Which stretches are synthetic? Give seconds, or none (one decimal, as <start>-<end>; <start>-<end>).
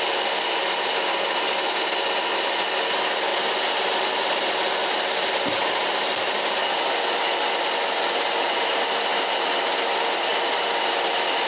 3.3-7.6; 10.3-11.5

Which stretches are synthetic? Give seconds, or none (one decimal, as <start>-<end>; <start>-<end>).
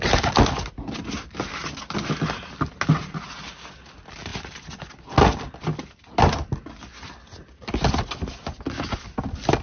none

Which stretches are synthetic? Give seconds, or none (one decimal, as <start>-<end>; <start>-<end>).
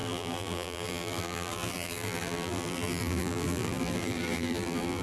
0.0-5.0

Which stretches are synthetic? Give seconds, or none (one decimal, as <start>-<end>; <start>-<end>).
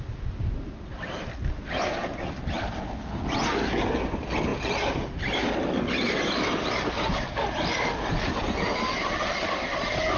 none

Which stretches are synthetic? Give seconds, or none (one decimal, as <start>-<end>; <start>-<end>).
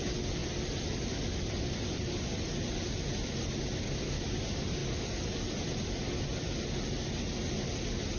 0.4-1.7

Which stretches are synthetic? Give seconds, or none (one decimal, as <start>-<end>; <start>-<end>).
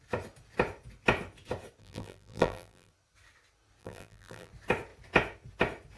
1.8-2.9; 3.8-4.5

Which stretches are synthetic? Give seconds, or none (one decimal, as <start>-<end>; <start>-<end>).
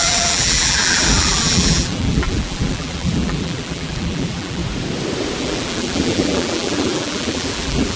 0.0-4.6; 5.4-8.0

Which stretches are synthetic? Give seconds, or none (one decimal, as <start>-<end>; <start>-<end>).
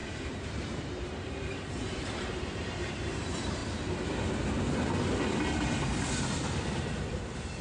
0.0-3.6; 7.1-7.6